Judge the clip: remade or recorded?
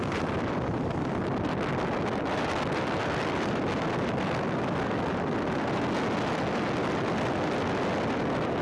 recorded